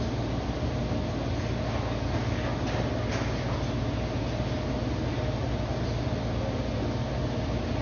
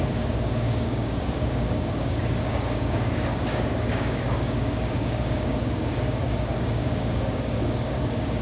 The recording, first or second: first